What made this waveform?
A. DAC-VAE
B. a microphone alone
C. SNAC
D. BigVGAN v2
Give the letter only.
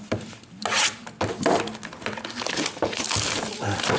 B